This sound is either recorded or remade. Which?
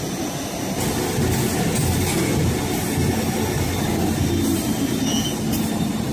recorded